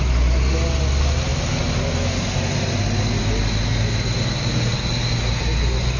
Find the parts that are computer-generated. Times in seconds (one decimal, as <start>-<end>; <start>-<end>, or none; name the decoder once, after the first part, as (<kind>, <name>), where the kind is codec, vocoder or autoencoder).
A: none